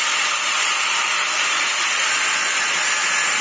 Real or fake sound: real